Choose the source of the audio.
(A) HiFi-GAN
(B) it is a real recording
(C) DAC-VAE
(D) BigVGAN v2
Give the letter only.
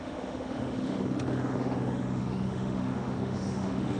C